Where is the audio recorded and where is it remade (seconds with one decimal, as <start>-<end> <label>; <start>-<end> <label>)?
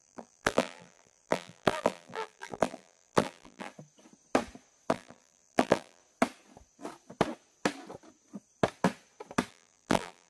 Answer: 0.0-3.7 remade; 3.7-4.9 recorded; 4.9-6.0 remade; 6.0-9.5 recorded; 9.5-10.3 remade